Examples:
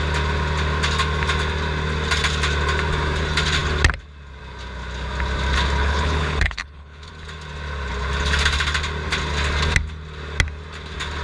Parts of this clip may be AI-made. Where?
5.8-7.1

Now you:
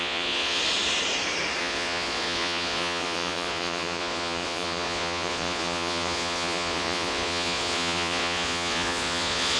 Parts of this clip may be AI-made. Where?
0.0-0.6; 1.6-9.6

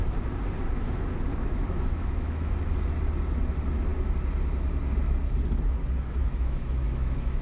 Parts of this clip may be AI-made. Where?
1.3-2.5; 6.2-7.4

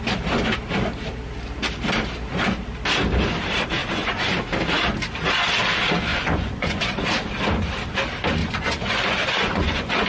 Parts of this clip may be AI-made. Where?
3.8-4.4; 6.1-7.0; 8.4-10.1

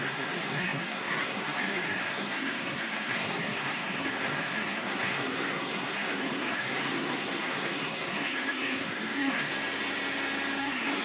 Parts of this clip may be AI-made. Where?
0.0-9.5; 10.6-11.0

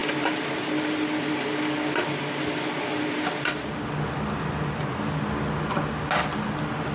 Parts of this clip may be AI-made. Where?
0.0-0.5

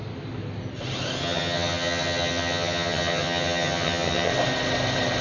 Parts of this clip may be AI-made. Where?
1.2-4.3

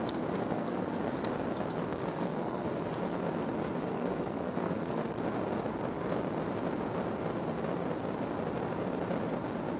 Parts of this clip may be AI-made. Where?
0.4-1.0; 1.9-2.8; 3.9-5.2